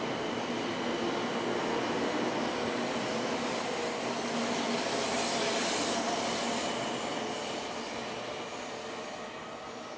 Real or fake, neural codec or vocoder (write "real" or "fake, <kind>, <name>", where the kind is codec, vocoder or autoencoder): real